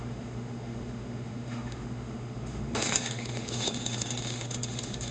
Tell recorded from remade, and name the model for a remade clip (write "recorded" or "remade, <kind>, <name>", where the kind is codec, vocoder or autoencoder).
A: remade, autoencoder, DAC-VAE